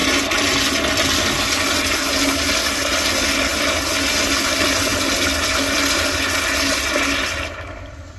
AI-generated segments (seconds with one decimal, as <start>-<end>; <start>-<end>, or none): none